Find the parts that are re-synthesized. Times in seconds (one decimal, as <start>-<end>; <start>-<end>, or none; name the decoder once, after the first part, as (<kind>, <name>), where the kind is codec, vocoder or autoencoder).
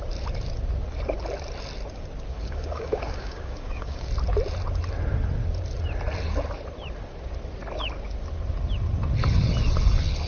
2.3-4.1 (codec, DAC)